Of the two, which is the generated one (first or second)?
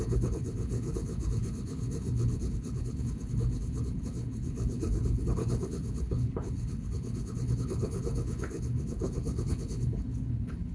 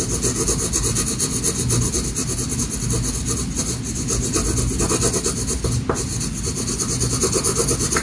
first